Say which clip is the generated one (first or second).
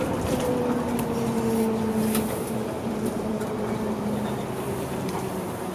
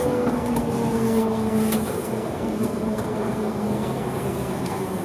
second